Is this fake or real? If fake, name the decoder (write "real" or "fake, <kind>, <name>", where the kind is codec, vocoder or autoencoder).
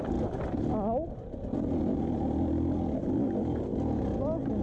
real